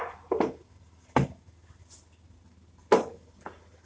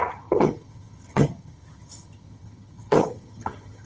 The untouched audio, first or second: first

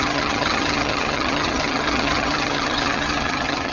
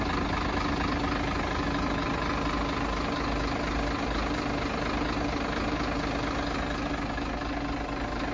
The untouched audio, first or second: second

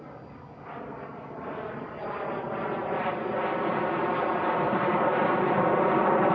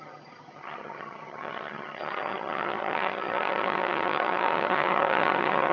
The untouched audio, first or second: first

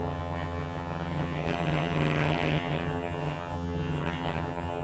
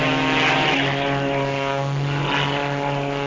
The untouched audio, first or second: second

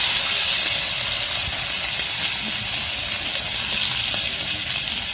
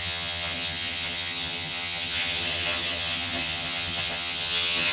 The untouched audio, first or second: first